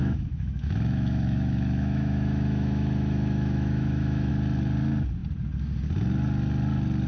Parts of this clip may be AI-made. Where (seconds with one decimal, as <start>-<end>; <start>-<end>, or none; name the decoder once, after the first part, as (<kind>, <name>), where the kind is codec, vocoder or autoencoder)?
0.0-4.3 (autoencoder, DAC-VAE)